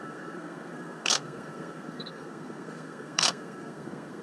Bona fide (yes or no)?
no